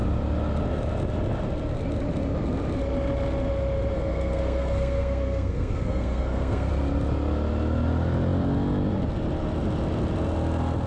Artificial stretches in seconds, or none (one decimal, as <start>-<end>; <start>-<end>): 3.9-6.7